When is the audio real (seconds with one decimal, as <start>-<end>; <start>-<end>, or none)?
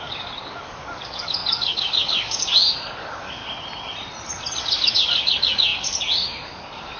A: 3.4-4.6